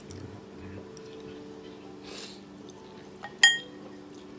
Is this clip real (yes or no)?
yes